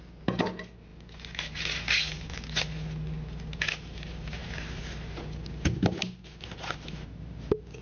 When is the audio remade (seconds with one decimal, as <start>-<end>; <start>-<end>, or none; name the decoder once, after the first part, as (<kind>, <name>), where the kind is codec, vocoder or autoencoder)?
none